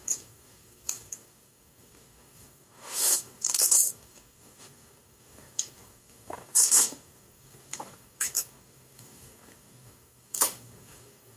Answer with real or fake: fake